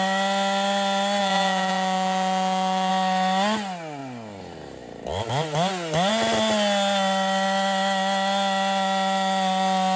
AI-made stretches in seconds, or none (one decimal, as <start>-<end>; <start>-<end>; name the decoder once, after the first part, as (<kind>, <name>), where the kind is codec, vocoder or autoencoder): 1.2-2.9 (vocoder, Vocos)